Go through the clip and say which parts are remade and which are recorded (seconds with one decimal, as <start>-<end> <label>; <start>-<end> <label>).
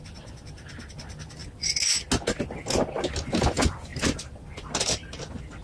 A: 0.0-3.9 recorded; 3.9-5.6 remade